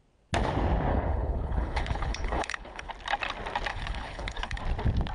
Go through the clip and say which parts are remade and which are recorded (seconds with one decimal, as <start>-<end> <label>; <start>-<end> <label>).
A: 0.0-0.9 recorded; 0.9-2.9 remade; 2.9-3.7 recorded; 3.7-4.6 remade; 4.6-5.1 recorded